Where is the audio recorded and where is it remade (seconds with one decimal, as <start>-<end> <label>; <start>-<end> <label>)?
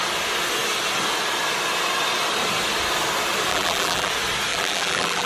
0.0-3.5 recorded; 3.5-4.1 remade; 4.1-4.5 recorded; 4.5-5.3 remade